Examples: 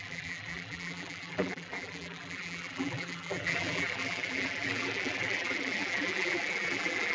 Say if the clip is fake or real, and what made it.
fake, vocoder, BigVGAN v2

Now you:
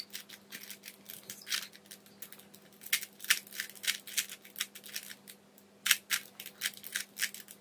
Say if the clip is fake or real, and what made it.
real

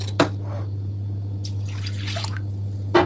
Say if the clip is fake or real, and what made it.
real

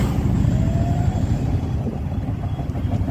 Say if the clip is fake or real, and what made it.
fake, vocoder, BigVGAN v2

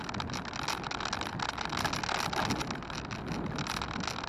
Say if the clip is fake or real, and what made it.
real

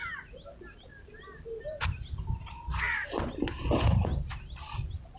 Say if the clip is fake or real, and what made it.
real